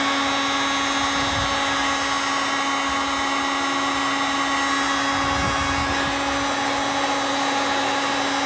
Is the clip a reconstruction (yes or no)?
no